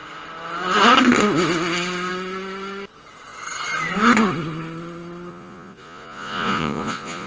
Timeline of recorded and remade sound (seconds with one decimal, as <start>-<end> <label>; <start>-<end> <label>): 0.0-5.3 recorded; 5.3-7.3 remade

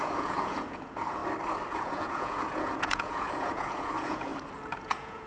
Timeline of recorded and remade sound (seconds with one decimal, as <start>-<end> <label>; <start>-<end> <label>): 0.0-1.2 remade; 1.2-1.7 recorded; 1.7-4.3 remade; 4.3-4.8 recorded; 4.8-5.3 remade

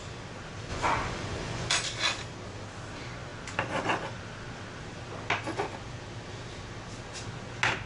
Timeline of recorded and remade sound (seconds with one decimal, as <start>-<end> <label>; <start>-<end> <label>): 0.0-0.7 recorded; 0.7-1.7 remade; 1.7-7.9 recorded